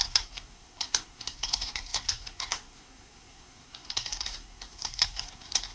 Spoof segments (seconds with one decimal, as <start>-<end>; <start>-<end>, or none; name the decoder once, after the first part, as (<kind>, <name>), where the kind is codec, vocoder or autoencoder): 0.0-5.7 (codec, SNAC)